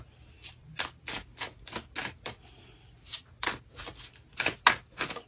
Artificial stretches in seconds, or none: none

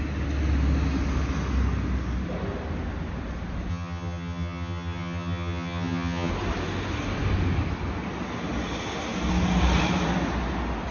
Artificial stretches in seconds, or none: 3.7-6.3 (vocoder, HiFi-GAN)

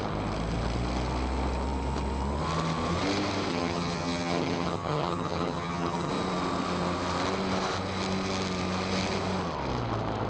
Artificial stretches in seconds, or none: 3.5-6.1 (vocoder, HiFi-GAN)

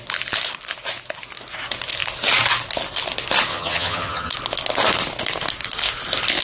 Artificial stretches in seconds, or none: 3.5-4.3 (vocoder, HiFi-GAN)

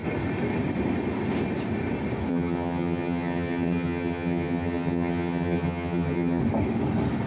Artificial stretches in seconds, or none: 2.3-6.4 (vocoder, HiFi-GAN)

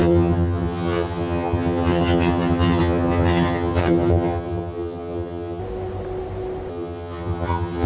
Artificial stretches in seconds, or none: 0.0-5.6 (vocoder, HiFi-GAN); 6.7-7.9

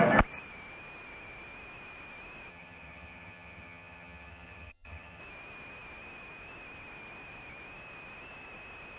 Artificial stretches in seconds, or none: 2.5-5.2 (vocoder, HiFi-GAN)